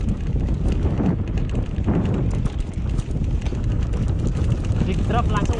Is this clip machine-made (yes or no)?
no